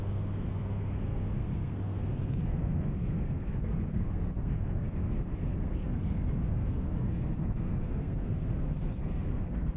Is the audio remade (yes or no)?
yes